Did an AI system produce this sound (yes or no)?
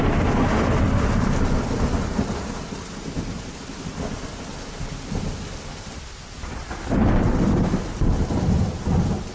no